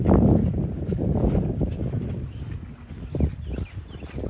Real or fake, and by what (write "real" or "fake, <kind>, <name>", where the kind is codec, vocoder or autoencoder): real